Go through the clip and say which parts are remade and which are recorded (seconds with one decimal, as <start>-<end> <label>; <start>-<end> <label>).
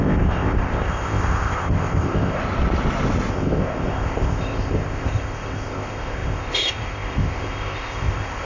0.0-2.4 remade; 2.4-3.3 recorded; 3.3-8.4 remade